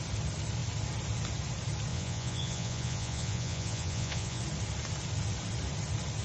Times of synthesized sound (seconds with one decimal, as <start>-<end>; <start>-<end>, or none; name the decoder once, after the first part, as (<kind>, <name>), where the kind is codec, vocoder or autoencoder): 1.9-4.4 (vocoder, Vocos)